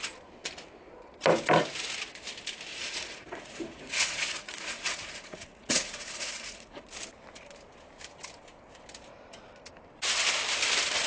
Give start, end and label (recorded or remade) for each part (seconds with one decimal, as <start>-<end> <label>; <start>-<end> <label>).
0.0-2.7 recorded; 2.7-6.8 remade; 6.8-11.1 recorded